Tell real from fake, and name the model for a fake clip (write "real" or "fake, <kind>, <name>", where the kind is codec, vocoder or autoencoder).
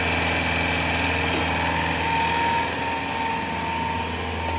real